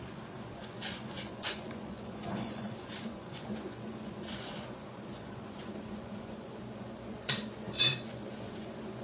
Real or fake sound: fake